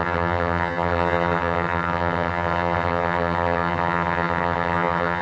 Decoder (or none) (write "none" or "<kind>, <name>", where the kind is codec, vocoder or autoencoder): vocoder, HiFi-GAN